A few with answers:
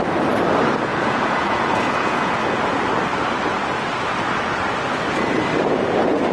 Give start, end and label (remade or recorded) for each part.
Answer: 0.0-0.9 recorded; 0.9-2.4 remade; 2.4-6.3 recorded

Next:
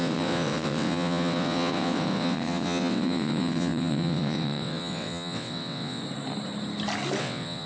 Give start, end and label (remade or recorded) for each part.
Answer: 0.0-6.0 remade; 6.0-7.2 recorded; 7.2-7.7 remade

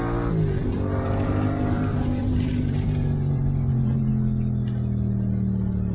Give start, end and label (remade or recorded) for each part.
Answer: 0.0-0.6 recorded; 0.6-4.1 remade; 4.1-5.9 recorded